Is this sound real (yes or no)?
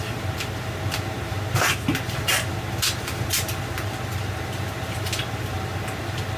yes